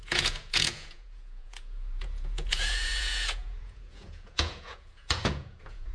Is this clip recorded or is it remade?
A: remade